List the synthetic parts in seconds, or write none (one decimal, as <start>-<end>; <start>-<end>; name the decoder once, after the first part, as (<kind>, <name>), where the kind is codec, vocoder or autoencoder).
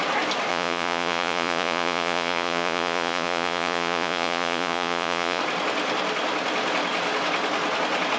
0.5-5.4 (vocoder, Vocos)